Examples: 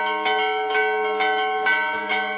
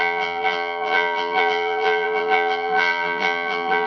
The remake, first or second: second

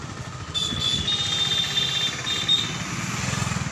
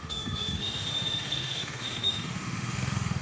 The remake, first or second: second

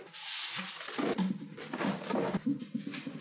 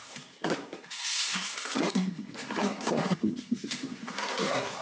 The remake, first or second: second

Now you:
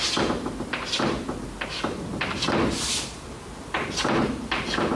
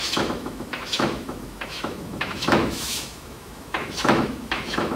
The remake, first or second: second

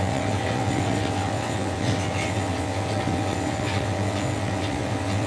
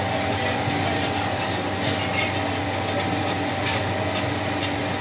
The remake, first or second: first